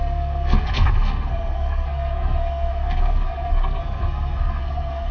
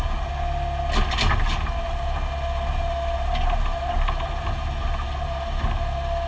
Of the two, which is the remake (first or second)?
first